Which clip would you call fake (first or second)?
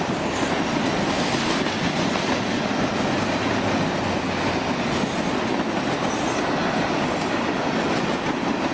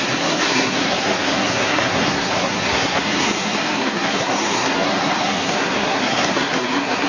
second